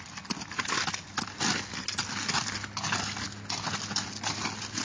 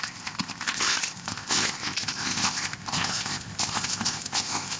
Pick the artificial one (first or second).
second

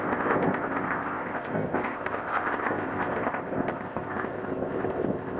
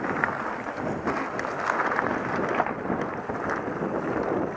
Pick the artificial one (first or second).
first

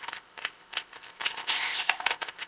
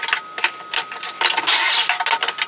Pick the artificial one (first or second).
first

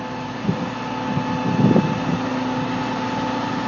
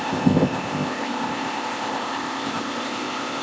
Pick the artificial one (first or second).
second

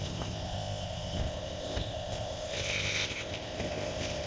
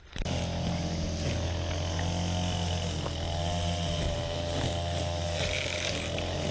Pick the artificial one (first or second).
first